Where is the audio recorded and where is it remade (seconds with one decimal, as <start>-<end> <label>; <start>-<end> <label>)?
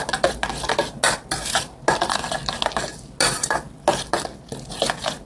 0.0-5.3 recorded